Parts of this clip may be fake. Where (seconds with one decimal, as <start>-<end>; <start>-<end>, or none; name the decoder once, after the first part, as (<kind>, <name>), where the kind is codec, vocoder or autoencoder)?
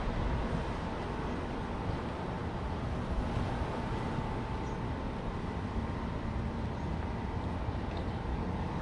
8.3-8.8 (codec, DAC)